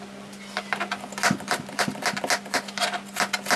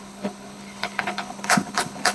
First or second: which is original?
first